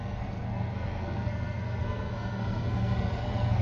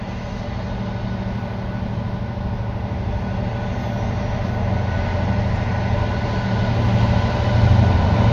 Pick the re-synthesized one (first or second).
first